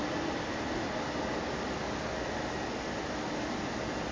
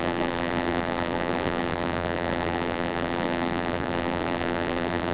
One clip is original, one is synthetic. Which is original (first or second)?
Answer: first